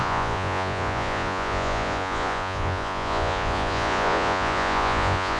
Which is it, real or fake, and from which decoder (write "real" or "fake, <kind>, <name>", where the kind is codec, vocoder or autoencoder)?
fake, vocoder, Vocos